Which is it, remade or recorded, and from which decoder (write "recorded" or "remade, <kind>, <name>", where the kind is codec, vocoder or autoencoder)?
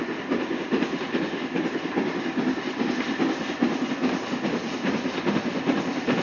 recorded